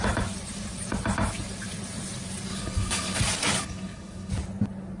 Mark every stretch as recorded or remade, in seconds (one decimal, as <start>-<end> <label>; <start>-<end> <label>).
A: 0.0-2.5 recorded; 2.5-3.2 remade; 3.2-3.6 recorded; 3.6-4.3 remade; 4.3-5.0 recorded